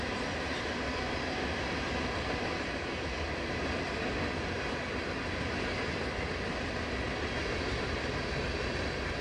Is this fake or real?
real